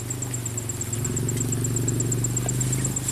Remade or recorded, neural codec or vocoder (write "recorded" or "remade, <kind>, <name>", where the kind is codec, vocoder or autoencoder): recorded